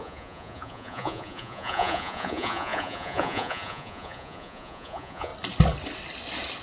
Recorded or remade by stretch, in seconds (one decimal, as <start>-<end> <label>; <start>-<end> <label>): 0.0-5.3 remade; 5.3-6.6 recorded

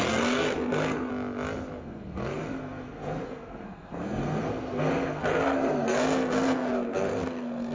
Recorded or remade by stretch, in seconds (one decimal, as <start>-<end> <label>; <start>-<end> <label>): 0.0-1.1 remade; 1.1-1.8 recorded; 1.8-7.7 remade